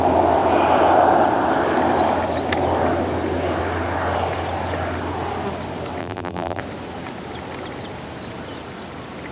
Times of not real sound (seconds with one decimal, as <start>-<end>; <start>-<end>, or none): 6.0-6.6

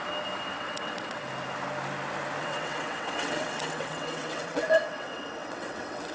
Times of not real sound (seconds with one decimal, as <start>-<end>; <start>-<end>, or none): 0.5-1.3; 2.4-6.1